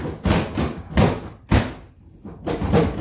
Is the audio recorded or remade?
recorded